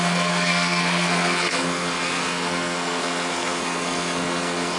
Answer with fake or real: fake